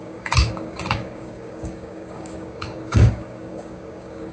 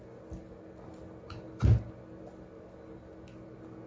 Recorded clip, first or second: second